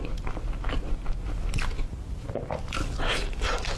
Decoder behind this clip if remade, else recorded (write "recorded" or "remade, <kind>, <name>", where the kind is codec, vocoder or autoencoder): recorded